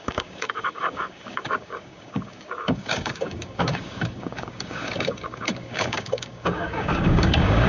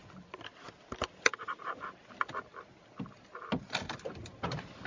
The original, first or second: second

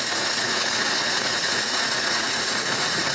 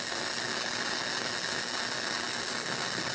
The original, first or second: second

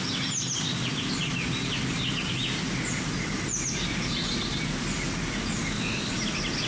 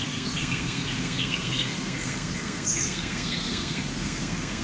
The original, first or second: first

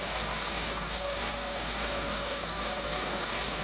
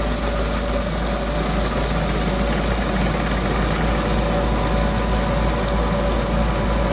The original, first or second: second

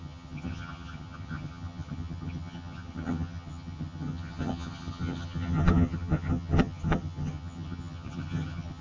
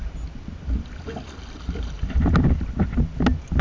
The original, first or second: second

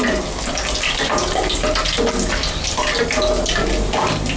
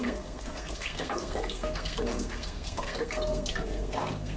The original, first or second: first